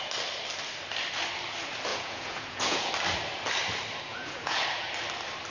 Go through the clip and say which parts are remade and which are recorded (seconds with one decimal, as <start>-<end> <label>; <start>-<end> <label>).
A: 0.0-1.9 recorded; 1.9-2.9 remade; 2.9-4.1 recorded; 4.1-4.6 remade; 4.6-5.5 recorded